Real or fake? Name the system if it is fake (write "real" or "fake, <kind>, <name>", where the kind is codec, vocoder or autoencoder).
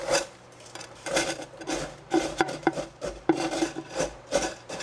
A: fake, vocoder, BigVGAN v2